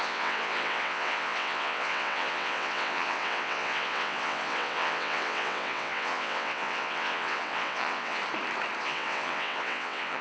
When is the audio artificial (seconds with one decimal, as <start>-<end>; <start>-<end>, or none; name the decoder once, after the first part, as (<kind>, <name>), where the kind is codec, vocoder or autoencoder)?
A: 0.0-8.2 (vocoder, WaveNeXt); 8.8-10.2